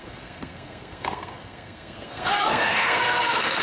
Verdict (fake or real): fake